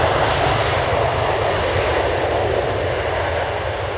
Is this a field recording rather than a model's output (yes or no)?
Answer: yes